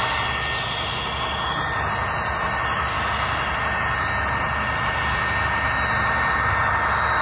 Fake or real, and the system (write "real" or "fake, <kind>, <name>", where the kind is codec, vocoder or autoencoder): real